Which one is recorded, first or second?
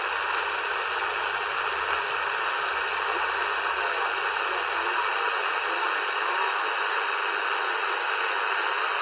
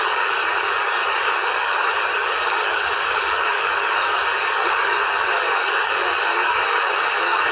first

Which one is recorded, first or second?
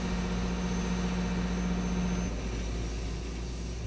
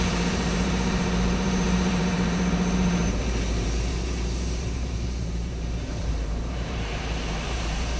first